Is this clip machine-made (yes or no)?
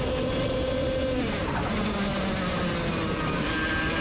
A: no